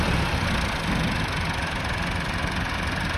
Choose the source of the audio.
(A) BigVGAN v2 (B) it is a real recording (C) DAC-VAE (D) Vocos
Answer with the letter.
B